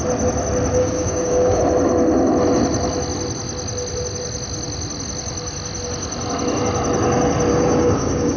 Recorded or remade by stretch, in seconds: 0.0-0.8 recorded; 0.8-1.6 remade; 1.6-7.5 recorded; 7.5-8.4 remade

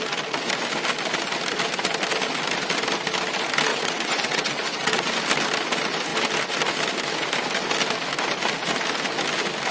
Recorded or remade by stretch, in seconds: 0.0-3.7 recorded; 3.7-5.1 remade; 5.1-9.7 recorded

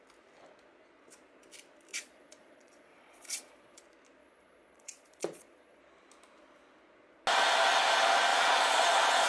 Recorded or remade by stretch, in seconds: 0.0-1.9 recorded; 1.9-3.8 remade; 3.8-4.2 recorded; 4.2-5.8 remade; 5.8-8.3 recorded; 8.3-9.3 remade

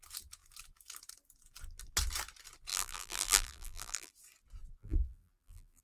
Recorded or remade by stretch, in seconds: 0.0-2.7 recorded; 2.7-4.1 remade; 4.1-4.8 recorded; 4.8-5.8 remade

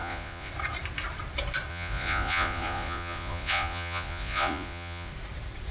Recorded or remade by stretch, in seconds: 0.0-0.5 remade; 0.5-1.7 recorded; 1.7-5.1 remade; 5.1-5.7 recorded

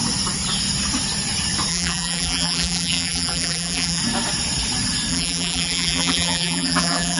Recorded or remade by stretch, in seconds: 0.0-1.7 recorded; 1.7-4.0 remade; 4.0-5.1 recorded; 5.1-7.2 remade

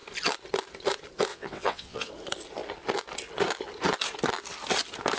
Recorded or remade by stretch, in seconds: 0.0-1.3 recorded; 1.3-2.1 remade; 2.1-5.2 recorded